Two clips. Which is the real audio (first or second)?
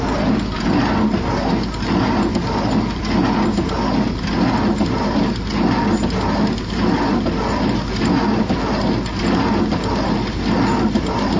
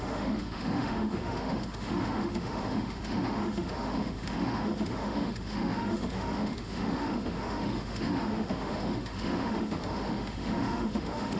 first